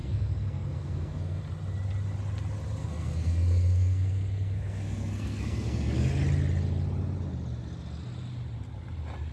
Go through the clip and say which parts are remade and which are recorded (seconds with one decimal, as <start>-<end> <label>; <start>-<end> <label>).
0.0-1.4 remade; 1.4-2.8 recorded; 2.8-6.1 remade; 6.1-9.3 recorded